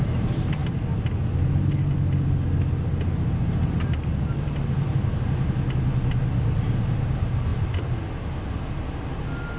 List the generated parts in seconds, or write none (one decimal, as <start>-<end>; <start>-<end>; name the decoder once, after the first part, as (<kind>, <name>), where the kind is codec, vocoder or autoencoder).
none